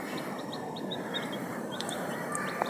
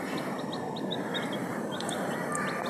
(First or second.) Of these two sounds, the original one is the second